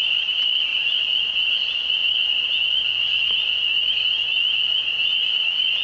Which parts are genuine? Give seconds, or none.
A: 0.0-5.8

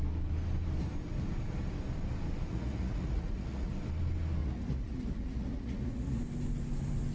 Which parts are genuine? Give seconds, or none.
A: 0.0-2.5; 3.7-4.4; 6.2-7.1

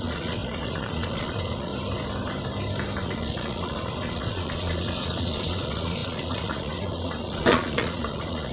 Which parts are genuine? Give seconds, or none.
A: 1.7-3.0

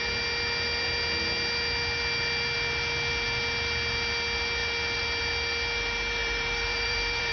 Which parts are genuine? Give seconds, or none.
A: 0.0-6.2

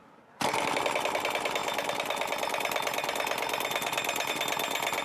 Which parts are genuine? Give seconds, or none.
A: 0.0-5.0

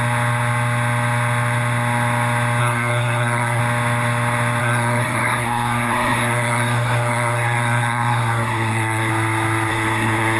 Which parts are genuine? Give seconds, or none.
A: 0.0-2.6; 3.6-4.6; 9.1-9.7